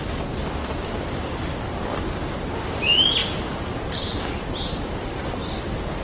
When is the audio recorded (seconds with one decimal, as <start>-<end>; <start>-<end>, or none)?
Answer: 0.0-3.2; 5.6-6.0